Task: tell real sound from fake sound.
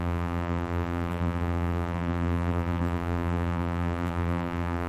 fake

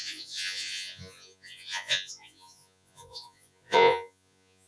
fake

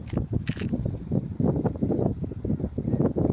real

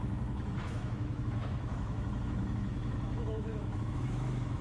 fake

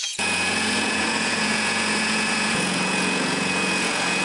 fake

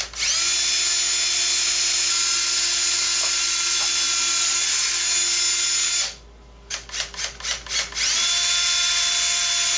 real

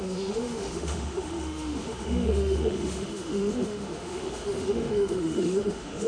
fake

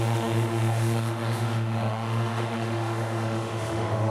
fake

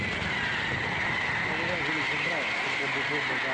real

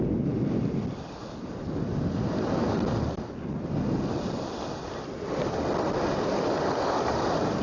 real